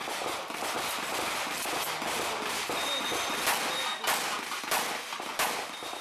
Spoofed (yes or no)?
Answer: no